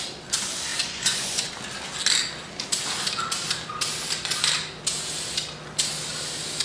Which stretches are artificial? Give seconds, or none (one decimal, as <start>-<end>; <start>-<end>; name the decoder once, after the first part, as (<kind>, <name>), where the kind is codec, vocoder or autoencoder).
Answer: 0.7-1.5 (vocoder, Vocos)